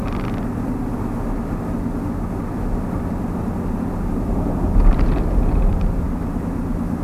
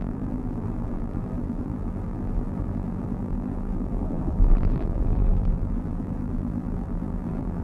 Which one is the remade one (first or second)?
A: second